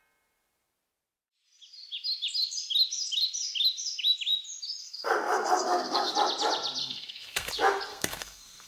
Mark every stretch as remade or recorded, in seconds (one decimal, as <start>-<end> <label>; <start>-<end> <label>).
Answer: 0.0-4.8 recorded; 4.8-6.1 remade; 6.1-6.8 recorded; 6.8-7.5 remade; 7.5-7.9 recorded; 7.9-8.7 remade